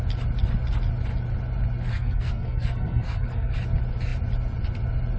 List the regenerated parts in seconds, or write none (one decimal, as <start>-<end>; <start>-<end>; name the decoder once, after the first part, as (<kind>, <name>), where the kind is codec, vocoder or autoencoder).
1.9-3.6 (codec, SNAC)